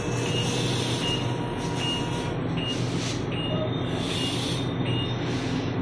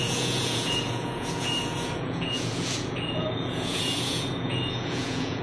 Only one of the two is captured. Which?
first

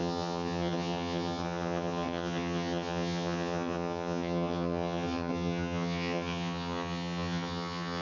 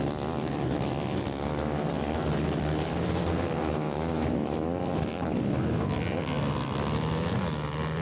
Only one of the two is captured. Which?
second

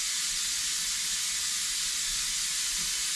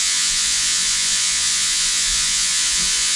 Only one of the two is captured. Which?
first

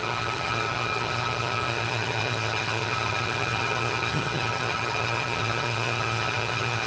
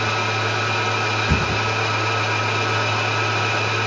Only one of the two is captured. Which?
second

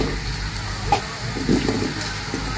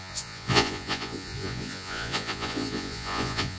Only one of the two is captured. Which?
first